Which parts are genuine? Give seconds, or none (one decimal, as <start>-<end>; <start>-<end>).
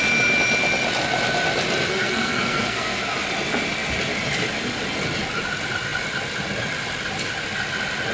0.0-1.9; 3.0-8.1